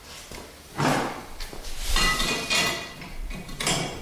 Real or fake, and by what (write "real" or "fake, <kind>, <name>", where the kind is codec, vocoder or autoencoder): real